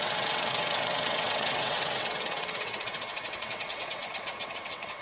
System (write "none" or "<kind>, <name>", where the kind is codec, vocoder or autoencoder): vocoder, WaveNeXt